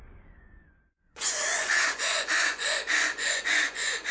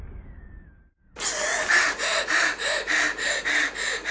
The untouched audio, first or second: second